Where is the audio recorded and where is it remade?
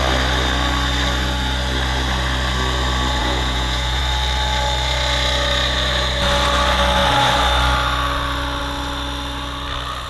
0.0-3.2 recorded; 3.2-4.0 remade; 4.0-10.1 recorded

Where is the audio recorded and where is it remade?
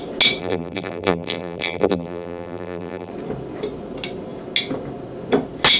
0.0-0.4 recorded; 0.4-3.1 remade; 3.1-5.8 recorded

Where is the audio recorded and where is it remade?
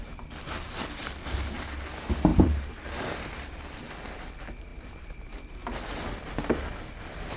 0.0-2.3 recorded; 2.3-3.2 remade; 3.2-7.4 recorded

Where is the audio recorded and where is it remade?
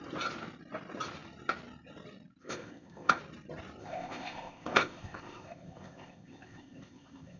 0.0-2.4 recorded; 2.4-3.2 remade; 3.2-3.8 recorded; 3.8-7.4 remade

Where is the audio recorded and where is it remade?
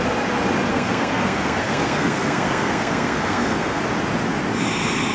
0.0-0.7 recorded; 0.7-3.8 remade; 3.8-5.1 recorded